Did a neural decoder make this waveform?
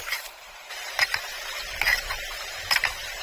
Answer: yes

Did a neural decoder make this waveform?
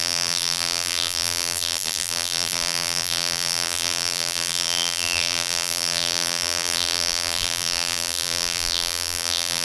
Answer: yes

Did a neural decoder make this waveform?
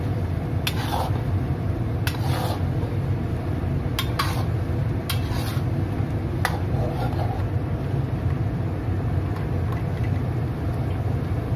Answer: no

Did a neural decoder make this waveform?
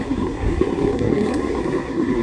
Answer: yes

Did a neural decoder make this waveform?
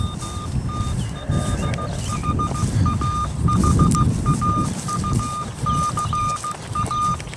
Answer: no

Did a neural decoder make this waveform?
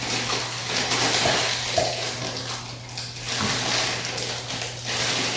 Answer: no